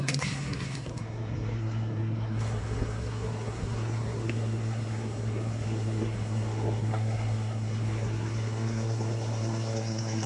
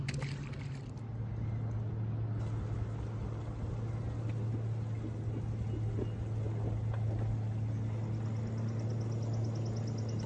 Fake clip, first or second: first